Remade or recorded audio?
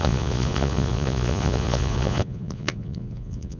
remade